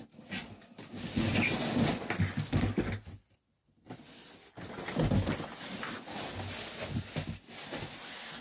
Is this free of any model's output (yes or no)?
yes